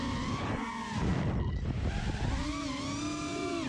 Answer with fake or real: real